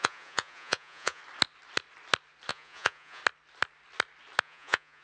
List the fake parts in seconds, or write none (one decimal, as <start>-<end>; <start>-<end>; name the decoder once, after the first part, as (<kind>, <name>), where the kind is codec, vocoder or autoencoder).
0.0-1.2 (vocoder, Vocos); 2.5-3.2; 4.4-5.0